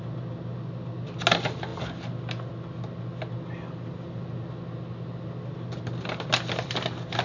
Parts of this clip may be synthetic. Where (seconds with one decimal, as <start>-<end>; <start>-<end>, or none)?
none